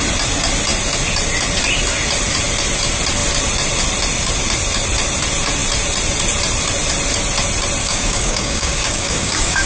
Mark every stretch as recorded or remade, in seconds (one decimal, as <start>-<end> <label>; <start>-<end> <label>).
0.0-7.8 recorded; 7.8-9.7 remade